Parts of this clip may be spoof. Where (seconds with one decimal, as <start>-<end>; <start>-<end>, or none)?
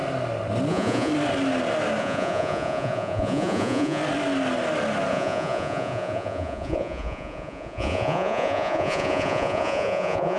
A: 0.7-1.1; 2.0-4.0; 5.1-10.4